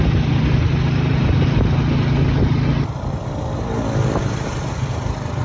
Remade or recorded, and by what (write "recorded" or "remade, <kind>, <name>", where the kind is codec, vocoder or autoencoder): recorded